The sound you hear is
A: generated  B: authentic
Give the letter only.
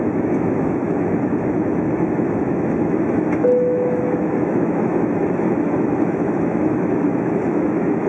A